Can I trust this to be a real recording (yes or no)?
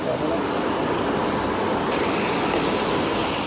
yes